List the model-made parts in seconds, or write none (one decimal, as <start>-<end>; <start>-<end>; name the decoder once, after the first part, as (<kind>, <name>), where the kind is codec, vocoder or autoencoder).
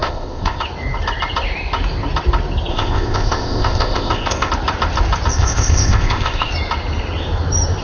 0.0-0.6 (codec, ZipCodec); 2.7-4.5; 5.3-6.5